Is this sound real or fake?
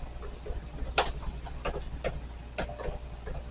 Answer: real